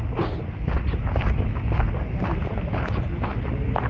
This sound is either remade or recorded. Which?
recorded